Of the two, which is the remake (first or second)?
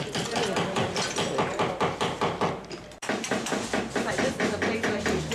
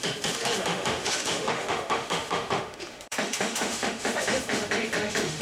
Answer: second